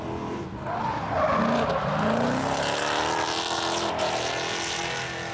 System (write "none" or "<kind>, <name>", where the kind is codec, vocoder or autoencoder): none